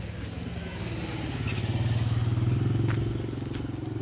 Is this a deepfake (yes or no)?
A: no